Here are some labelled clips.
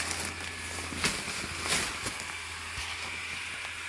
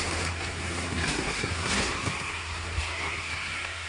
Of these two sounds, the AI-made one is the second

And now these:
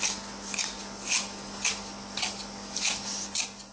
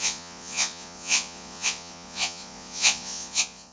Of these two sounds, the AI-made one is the second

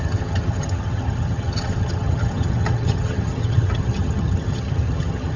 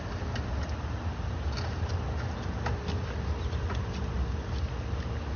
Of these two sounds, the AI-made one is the first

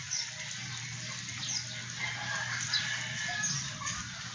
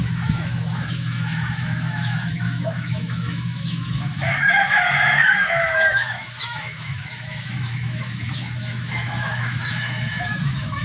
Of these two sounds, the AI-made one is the second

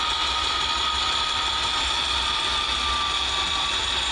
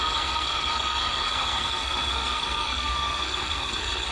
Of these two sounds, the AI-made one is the second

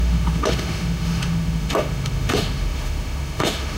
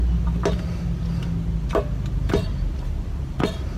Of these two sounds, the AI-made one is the first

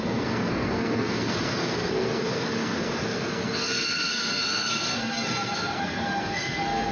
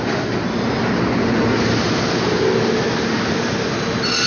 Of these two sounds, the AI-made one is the first